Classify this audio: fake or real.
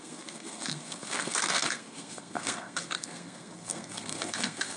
fake